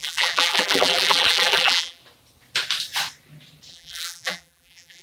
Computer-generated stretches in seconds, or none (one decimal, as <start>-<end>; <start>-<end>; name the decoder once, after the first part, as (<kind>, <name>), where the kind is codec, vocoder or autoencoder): 0.0-2.0 (vocoder, BigVGAN v2); 3.7-5.0